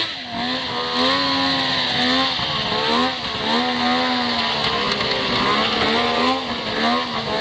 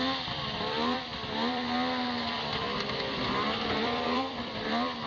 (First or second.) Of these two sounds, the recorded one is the first